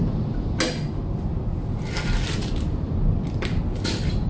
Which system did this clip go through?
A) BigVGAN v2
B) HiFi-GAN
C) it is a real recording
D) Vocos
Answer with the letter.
C